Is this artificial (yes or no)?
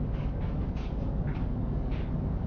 yes